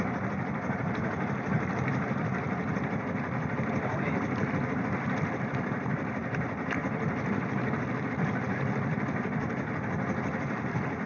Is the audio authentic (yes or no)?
no